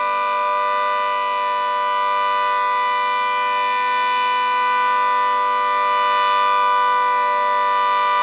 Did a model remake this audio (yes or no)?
no